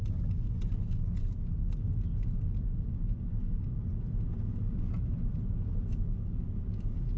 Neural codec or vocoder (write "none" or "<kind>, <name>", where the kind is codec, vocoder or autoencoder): none